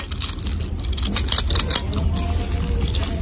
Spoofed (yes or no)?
no